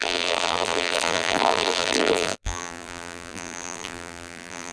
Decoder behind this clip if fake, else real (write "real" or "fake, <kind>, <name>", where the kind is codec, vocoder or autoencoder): fake, vocoder, BigVGAN v2